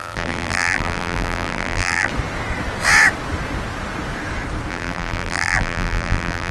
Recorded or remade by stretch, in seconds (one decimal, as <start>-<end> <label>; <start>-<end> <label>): 0.0-2.1 remade; 2.1-4.7 recorded; 4.7-6.5 remade